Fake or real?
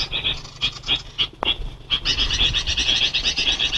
real